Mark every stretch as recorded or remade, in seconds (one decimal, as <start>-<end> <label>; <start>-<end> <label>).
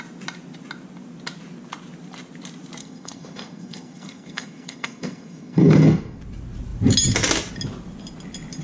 0.0-2.8 recorded; 2.8-6.2 remade; 6.2-8.6 recorded